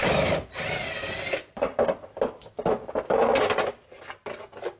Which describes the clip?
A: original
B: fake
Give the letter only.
A